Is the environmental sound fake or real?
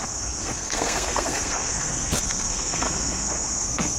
fake